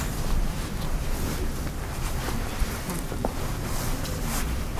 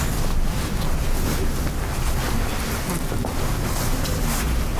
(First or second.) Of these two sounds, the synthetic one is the first